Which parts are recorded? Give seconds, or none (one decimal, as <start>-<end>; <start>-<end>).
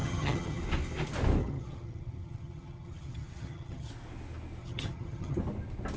0.6-1.4; 3.9-4.6; 5.4-6.0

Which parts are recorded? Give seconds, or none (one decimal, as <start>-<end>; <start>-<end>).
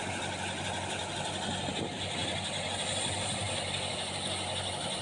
0.0-5.0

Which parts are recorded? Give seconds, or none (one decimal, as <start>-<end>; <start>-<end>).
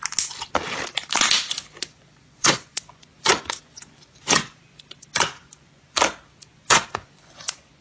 0.0-1.8; 6.1-6.5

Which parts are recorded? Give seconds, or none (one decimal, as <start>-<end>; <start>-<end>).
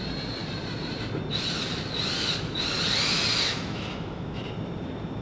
0.0-3.5; 4.4-5.2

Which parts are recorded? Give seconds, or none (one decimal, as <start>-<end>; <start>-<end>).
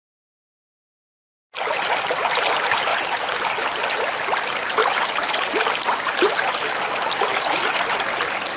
0.0-8.6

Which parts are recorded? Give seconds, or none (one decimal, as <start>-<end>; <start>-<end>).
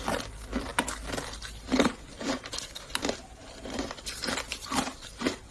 0.0-5.5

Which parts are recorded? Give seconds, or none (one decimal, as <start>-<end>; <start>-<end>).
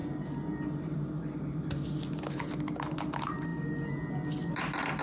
0.0-5.0